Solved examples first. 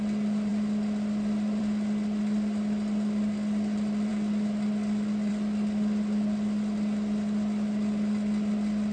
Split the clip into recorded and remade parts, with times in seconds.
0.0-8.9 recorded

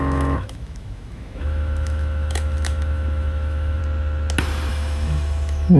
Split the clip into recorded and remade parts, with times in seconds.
0.0-3.8 remade; 3.8-4.7 recorded; 4.7-5.8 remade

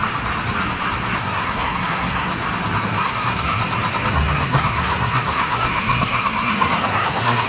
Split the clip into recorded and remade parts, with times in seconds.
0.0-1.2 recorded; 1.2-2.3 remade; 2.3-2.8 recorded; 2.8-3.6 remade; 3.6-4.1 recorded; 4.1-7.5 remade

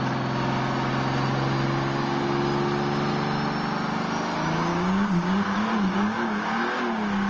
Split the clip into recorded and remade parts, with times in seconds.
0.0-4.7 recorded; 4.7-6.8 remade; 6.8-7.3 recorded

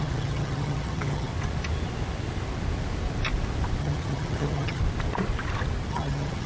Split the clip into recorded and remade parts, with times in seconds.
0.0-1.3 remade; 1.3-3.8 recorded; 3.8-4.8 remade; 4.8-5.9 recorded; 5.9-6.5 remade

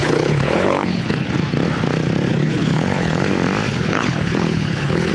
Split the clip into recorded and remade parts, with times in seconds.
0.0-1.3 remade; 1.3-2.3 recorded; 2.3-3.3 remade; 3.3-3.7 recorded; 3.7-5.1 remade